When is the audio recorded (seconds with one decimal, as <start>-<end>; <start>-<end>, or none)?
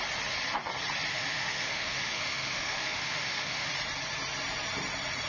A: 0.0-1.1; 3.7-5.3